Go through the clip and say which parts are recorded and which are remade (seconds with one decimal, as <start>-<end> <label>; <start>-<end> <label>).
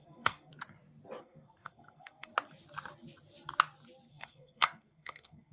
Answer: 0.0-0.5 remade; 0.5-1.2 recorded; 1.2-2.3 remade; 2.3-4.1 recorded; 4.1-5.5 remade